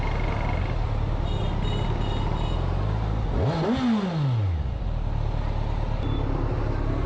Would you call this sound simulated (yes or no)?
no